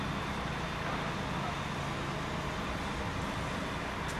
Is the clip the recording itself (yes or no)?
yes